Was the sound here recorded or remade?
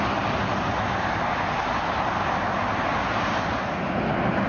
recorded